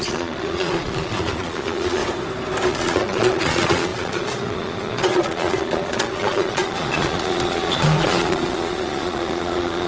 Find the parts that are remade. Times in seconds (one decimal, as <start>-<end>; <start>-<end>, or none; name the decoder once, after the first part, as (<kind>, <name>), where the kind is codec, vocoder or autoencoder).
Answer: 0.0-2.0 (vocoder, Vocos); 2.7-9.9